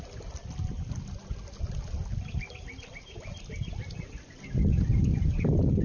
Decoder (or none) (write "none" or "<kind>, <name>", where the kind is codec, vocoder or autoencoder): none